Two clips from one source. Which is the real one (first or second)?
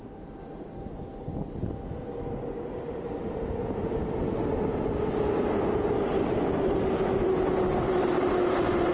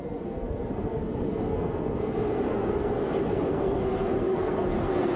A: first